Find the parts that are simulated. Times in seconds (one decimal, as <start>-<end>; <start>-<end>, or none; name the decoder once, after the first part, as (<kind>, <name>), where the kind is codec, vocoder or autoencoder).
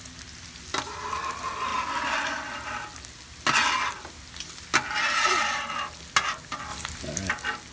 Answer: none